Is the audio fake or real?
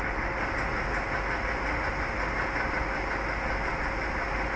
real